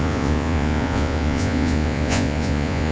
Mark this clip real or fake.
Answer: fake